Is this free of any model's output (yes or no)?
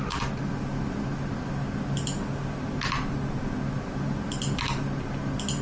yes